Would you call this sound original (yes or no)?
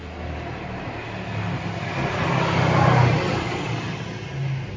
yes